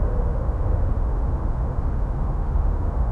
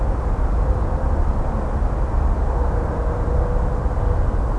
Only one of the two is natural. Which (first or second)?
second